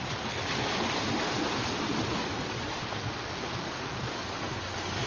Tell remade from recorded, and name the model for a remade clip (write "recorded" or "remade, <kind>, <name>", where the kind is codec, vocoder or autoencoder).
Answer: recorded